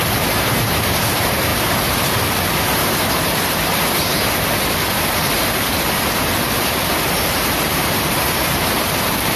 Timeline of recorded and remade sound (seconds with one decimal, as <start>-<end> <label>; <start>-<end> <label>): 0.0-1.5 remade; 1.5-2.8 recorded; 2.8-9.4 remade